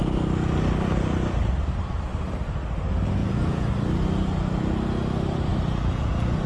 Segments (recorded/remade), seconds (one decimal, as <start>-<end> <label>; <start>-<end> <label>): 0.0-3.2 recorded; 3.2-3.7 remade; 3.7-6.5 recorded